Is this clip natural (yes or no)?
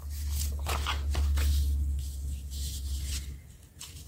yes